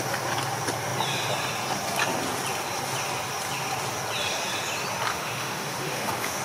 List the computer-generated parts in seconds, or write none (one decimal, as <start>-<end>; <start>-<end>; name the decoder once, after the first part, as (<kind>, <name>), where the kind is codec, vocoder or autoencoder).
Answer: 5.1-6.4 (autoencoder, DAC-VAE)